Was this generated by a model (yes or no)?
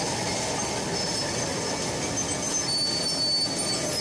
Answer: no